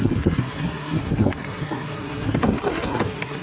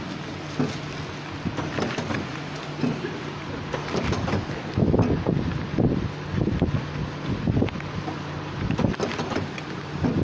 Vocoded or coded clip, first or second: first